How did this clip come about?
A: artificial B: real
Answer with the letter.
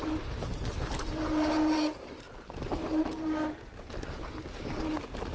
A